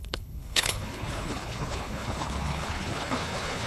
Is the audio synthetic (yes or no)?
yes